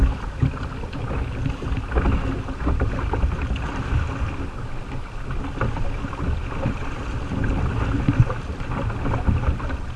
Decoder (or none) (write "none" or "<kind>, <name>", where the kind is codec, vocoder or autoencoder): none